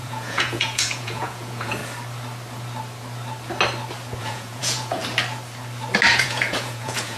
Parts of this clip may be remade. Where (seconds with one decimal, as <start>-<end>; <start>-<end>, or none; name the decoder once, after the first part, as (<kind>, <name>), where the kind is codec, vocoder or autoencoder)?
0.0-1.8 (vocoder, Vocos); 4.2-5.0; 6.1-7.2